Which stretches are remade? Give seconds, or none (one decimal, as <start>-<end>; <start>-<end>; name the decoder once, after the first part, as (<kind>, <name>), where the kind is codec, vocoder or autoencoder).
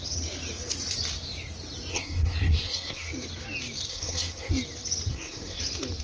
1.9-3.1 (codec, SNAC); 3.9-4.5; 5.1-5.6